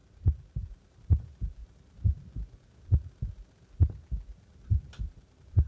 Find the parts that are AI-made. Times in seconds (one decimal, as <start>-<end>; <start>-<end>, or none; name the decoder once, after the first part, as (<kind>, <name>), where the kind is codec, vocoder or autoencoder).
0.7-1.6 (vocoder, BigVGAN v2); 5.0-5.7